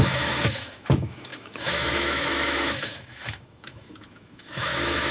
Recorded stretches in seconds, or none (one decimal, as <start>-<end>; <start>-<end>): none